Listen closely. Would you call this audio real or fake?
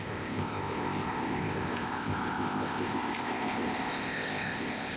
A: fake